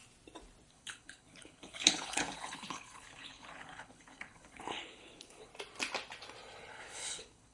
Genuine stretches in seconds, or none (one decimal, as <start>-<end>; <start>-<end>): 0.0-0.7; 5.5-6.7